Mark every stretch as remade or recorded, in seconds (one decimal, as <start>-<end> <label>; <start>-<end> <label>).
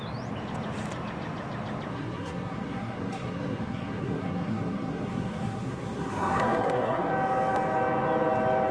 0.0-1.9 recorded; 1.9-7.1 remade; 7.1-8.7 recorded